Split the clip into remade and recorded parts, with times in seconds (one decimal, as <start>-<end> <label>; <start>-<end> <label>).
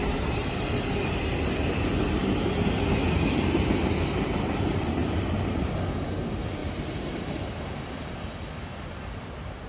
0.0-0.8 remade; 0.8-6.6 recorded; 6.6-7.6 remade; 7.6-9.7 recorded